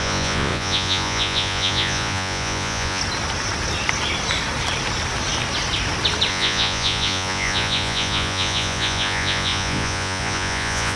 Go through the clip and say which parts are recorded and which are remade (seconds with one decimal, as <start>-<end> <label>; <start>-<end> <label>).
0.0-3.0 remade; 3.0-6.3 recorded; 6.3-11.0 remade

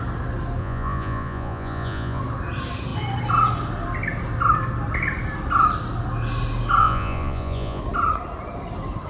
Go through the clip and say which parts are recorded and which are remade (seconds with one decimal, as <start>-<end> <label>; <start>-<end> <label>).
0.0-0.6 recorded; 0.6-2.2 remade; 2.2-6.8 recorded; 6.8-7.8 remade; 7.8-9.1 recorded

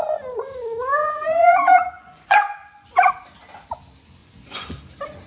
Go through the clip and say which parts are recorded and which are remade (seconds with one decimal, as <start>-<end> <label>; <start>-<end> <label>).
0.0-1.0 recorded; 1.0-3.1 remade; 3.1-4.2 recorded; 4.2-4.8 remade; 4.8-5.3 recorded

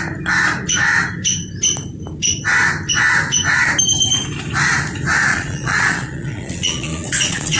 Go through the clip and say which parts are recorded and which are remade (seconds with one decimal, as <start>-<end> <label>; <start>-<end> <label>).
0.0-5.3 recorded; 5.3-7.6 remade

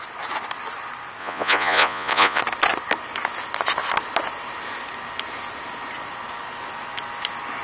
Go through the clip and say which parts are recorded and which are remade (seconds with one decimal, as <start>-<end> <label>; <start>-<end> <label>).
0.0-1.2 recorded; 1.2-2.4 remade; 2.4-7.6 recorded